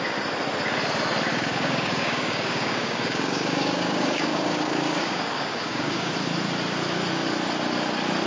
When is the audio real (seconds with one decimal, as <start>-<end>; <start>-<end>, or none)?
0.0-1.3; 6.1-8.3